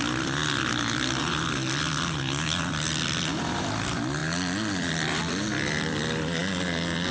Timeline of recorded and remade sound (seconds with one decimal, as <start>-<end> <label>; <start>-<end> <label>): 0.0-0.4 remade; 0.4-2.6 recorded; 2.6-6.4 remade; 6.4-7.1 recorded